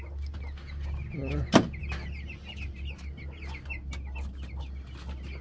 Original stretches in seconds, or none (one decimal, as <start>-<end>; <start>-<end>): 0.0-5.4

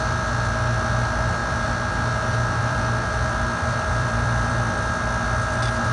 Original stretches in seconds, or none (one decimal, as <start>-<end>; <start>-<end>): 0.0-1.4; 4.9-5.9

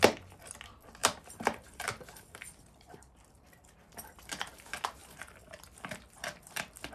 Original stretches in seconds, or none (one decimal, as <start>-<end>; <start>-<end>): 0.0-1.0; 3.1-5.0

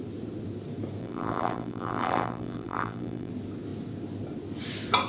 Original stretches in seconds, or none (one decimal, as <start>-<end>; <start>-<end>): 0.0-1.0; 3.3-5.1

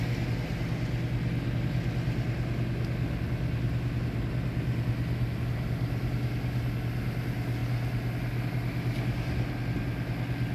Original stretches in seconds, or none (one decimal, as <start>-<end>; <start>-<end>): 0.0-10.5